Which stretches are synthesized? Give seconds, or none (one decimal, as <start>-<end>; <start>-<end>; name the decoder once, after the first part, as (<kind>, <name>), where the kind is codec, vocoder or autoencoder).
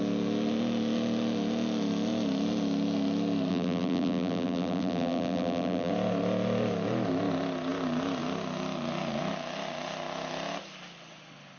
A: 3.5-5.9 (vocoder, BigVGAN v2)